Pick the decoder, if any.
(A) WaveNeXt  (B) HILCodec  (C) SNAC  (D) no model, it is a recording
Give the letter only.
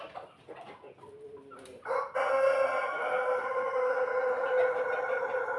D